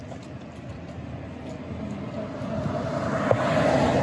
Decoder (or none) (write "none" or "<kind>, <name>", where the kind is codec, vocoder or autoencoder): none